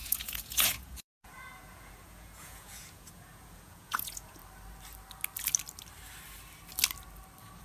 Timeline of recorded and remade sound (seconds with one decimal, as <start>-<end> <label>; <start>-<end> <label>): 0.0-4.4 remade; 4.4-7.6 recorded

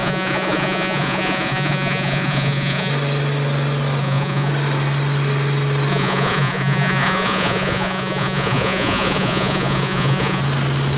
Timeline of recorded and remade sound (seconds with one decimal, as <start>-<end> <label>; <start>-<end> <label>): 0.0-2.9 remade; 2.9-4.0 recorded; 4.0-4.5 remade; 4.5-5.9 recorded; 5.9-10.4 remade; 10.4-11.0 recorded

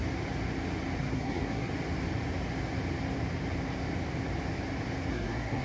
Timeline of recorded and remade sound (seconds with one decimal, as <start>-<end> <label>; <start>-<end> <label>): 0.0-1.0 recorded; 1.0-1.7 remade; 1.7-5.1 recorded; 5.1-5.6 remade

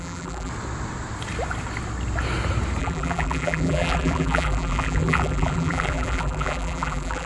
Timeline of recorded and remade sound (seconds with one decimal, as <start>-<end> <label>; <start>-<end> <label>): 0.0-0.5 remade; 0.5-2.8 recorded; 2.8-7.3 remade

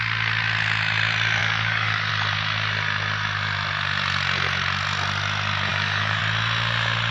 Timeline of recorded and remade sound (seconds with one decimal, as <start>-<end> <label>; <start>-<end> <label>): 0.0-1.4 recorded; 1.4-2.1 remade; 2.1-5.7 recorded; 5.7-6.2 remade; 6.2-7.1 recorded